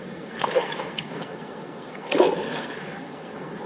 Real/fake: fake